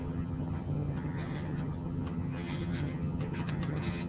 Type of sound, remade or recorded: remade